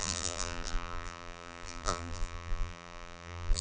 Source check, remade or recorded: remade